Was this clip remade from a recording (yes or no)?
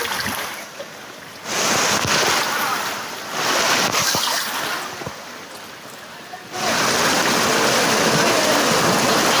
no